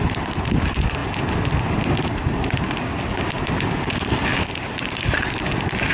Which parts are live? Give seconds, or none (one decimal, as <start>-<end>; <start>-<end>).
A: 0.0-5.9